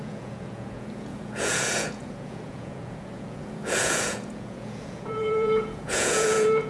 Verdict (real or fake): fake